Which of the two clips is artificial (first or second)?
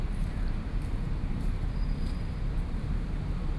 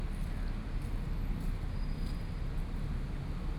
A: first